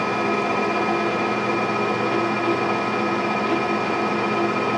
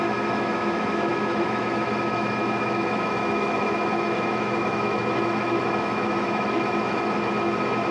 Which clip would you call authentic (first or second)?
first